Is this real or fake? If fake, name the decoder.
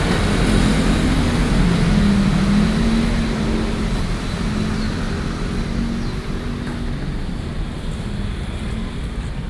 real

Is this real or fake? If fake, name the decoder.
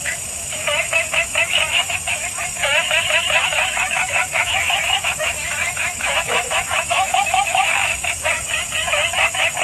fake, autoencoder, DAC-VAE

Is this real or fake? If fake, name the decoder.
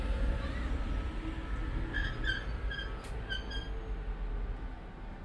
real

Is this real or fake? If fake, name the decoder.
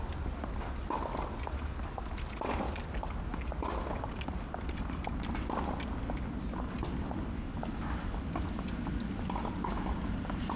real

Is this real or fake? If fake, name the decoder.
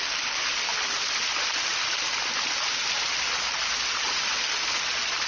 real